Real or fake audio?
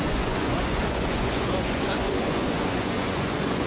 fake